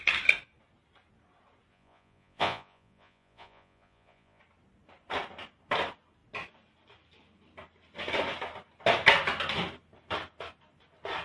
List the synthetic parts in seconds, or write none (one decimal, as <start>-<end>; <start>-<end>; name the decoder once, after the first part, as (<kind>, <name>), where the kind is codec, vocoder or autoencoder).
1.7-4.4 (vocoder, Vocos)